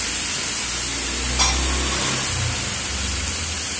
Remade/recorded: recorded